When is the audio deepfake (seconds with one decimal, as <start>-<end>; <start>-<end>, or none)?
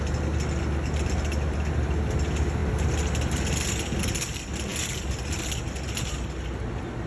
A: none